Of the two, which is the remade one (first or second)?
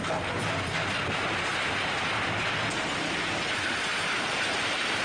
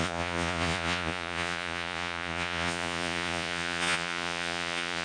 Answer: second